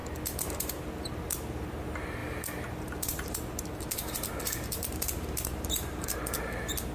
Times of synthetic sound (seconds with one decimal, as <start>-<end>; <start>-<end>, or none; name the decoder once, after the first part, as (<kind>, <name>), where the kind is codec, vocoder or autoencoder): 2.2-6.2 (vocoder, BigVGAN v2)